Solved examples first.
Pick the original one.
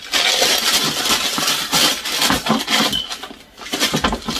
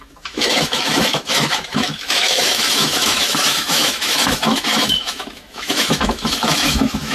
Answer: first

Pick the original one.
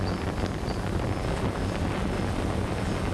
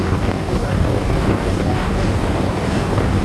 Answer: first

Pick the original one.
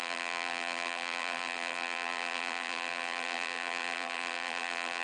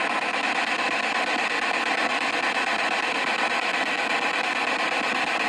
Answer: second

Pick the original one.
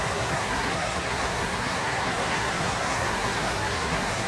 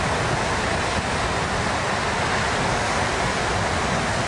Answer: second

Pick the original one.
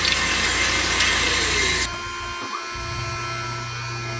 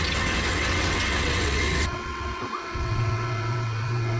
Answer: first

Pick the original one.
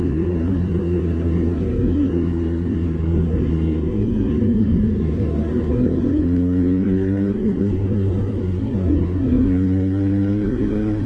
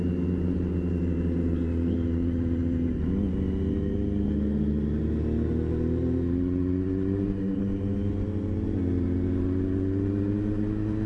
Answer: second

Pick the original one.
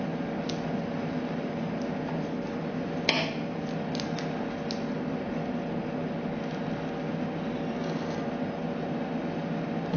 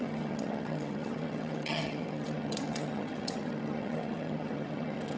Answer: first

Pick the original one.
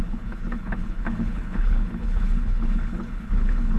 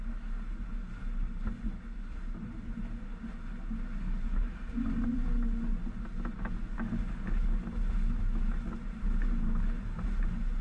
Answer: second